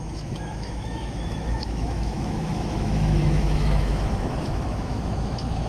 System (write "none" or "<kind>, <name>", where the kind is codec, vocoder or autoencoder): autoencoder, DAC-VAE